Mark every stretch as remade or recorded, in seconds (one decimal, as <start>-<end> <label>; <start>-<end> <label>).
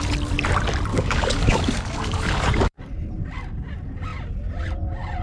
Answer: 0.0-0.9 recorded; 0.9-2.8 remade; 2.8-5.2 recorded